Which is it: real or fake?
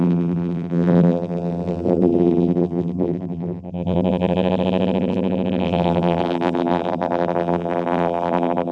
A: fake